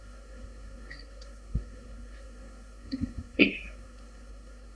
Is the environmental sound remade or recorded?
remade